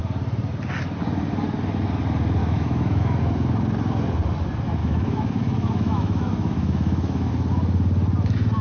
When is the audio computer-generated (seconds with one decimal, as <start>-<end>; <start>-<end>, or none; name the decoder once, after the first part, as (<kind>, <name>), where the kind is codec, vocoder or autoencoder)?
2.4-3.2 (autoencoder, DAC-VAE); 4.8-7.3